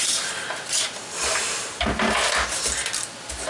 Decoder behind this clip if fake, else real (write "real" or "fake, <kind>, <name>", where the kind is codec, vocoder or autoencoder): real